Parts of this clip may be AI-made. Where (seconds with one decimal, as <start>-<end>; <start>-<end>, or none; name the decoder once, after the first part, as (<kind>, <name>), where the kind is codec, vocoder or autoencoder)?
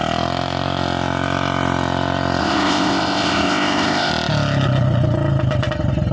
2.4-4.1 (codec, ZipCodec)